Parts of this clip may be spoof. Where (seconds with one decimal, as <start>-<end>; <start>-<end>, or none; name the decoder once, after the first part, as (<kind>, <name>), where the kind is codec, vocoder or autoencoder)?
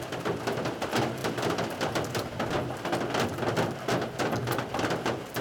1.2-2.5 (vocoder, BigVGAN v2); 4.4-5.4